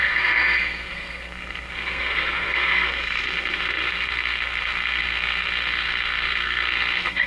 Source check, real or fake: fake